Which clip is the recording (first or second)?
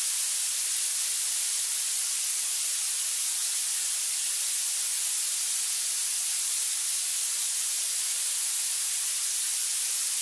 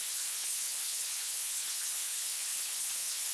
first